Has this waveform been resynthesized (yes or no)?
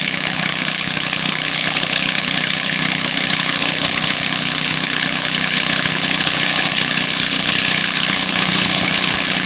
yes